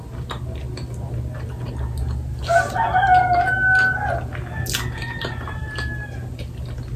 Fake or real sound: real